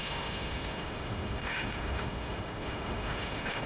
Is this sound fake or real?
fake